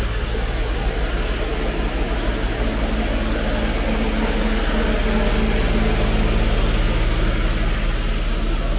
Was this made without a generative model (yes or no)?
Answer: yes